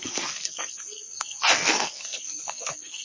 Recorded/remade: remade